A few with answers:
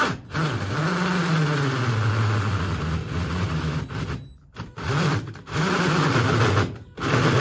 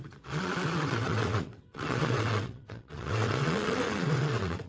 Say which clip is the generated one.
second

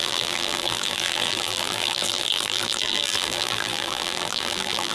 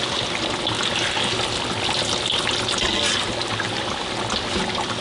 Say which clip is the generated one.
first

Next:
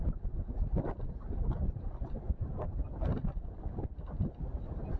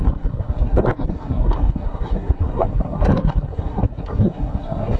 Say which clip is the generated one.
second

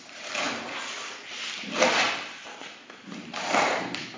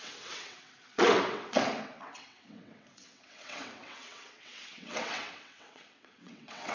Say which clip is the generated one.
second